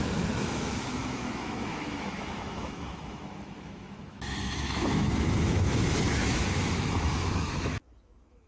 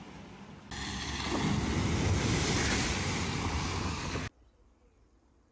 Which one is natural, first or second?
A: second